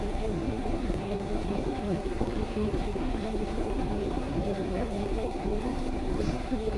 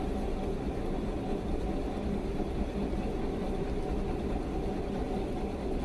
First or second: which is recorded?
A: second